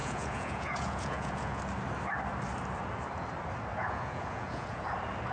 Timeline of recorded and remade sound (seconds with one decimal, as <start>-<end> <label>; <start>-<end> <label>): 0.0-1.6 remade; 1.6-3.7 recorded; 3.7-4.8 remade; 4.8-5.3 recorded